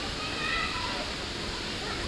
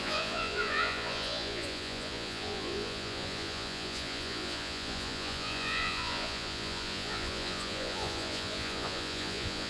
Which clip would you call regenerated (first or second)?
second